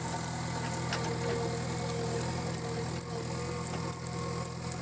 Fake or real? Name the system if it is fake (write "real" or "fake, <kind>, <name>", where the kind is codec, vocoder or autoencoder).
real